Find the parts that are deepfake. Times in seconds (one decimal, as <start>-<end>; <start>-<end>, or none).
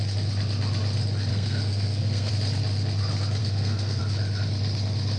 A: 1.3-2.3; 3.4-4.0